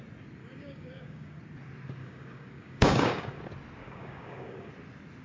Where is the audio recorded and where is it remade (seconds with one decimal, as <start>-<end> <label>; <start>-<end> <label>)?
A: 0.0-0.4 recorded; 0.4-1.4 remade; 1.4-2.0 recorded; 2.0-3.4 remade; 3.4-3.8 recorded; 3.8-4.7 remade; 4.7-5.2 recorded